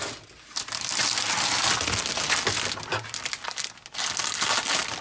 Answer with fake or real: real